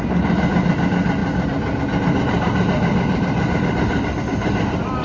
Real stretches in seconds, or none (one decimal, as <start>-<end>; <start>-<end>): 0.0-1.2; 4.2-5.0